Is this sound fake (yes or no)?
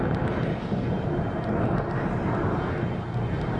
no